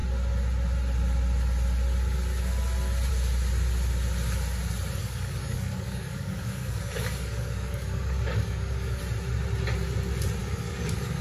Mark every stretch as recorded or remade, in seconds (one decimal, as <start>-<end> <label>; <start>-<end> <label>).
0.0-5.0 recorded; 5.0-9.0 remade; 9.0-10.4 recorded; 10.4-11.2 remade